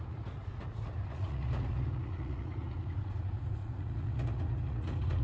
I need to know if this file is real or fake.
fake